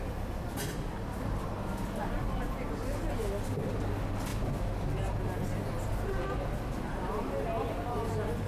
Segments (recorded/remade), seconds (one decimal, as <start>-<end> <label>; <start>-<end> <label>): 0.0-8.5 recorded